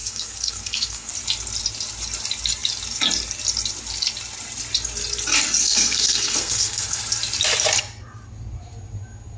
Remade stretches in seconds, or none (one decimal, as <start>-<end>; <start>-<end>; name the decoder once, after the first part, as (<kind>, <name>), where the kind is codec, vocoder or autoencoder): 0.0-1.1 (codec, SNAC); 5.6-7.0